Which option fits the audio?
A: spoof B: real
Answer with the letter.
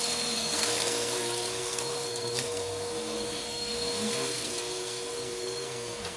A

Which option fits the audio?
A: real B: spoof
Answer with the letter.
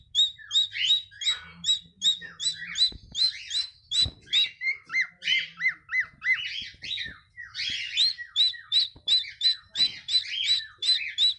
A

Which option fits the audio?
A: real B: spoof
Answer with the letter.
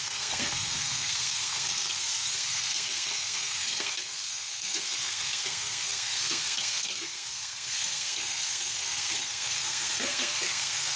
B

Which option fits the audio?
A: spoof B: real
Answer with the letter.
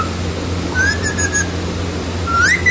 B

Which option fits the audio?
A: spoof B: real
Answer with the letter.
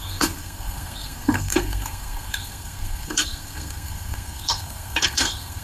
A